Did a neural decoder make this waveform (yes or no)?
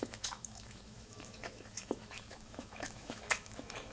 yes